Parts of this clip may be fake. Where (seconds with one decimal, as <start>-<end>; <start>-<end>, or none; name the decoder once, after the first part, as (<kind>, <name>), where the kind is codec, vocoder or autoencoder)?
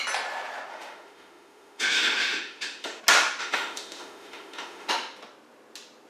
0.7-3.0 (autoencoder, DAC-VAE); 3.4-4.9